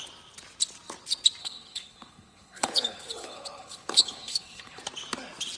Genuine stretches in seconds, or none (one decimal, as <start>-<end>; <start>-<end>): 0.0-1.4; 4.8-5.6